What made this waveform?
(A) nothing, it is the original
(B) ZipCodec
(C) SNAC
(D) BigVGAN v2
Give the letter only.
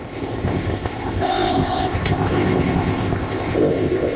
B